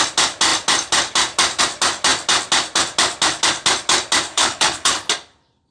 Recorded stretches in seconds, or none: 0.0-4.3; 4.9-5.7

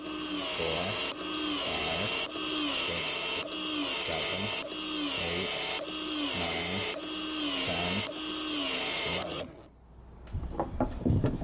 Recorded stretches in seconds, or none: 0.0-8.9; 9.5-11.4